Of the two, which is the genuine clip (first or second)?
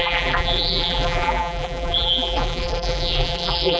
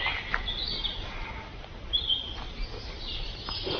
second